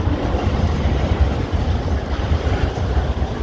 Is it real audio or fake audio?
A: real